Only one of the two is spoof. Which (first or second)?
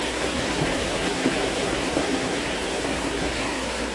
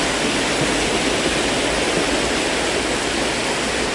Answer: first